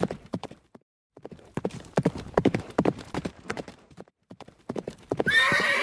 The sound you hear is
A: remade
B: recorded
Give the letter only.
A